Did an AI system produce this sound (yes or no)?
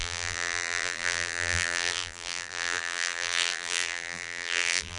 yes